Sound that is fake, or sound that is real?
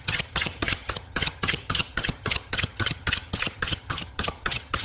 fake